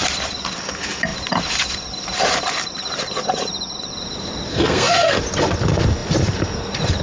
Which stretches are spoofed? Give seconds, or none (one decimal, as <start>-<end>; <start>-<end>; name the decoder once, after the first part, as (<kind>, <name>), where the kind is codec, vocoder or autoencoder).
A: 4.5-5.2 (codec, SNAC)